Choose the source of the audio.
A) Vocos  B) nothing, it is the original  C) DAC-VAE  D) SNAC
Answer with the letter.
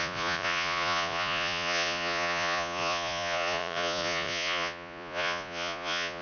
A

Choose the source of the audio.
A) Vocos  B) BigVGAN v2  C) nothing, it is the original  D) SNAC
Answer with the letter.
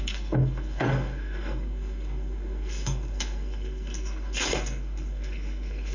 D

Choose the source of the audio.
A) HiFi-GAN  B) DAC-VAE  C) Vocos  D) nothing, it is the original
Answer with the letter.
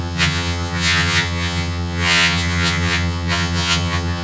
A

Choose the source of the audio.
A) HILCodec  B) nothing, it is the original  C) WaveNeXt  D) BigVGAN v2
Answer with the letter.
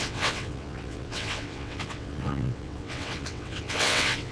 C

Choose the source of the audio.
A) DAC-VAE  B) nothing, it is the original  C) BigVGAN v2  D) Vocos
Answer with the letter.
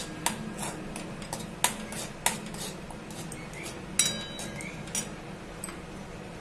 B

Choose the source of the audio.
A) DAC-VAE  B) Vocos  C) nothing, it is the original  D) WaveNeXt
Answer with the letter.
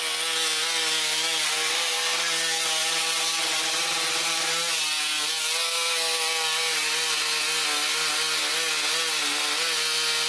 C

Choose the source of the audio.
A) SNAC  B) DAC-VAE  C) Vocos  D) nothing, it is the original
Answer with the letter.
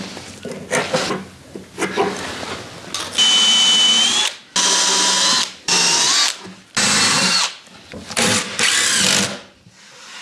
D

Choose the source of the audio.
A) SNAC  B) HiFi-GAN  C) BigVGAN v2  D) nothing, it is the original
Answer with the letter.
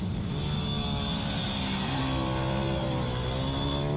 D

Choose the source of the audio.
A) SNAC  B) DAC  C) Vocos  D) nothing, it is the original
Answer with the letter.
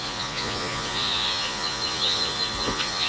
C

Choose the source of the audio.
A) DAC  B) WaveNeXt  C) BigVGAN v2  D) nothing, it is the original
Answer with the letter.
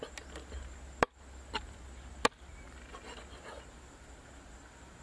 D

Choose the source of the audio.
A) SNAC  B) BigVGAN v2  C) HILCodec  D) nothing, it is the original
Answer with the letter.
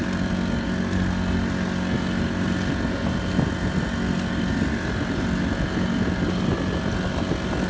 D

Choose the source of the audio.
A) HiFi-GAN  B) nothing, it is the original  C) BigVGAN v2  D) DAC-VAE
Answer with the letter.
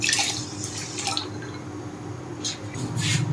B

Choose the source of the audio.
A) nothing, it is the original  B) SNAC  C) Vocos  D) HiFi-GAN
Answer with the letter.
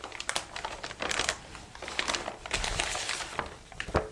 A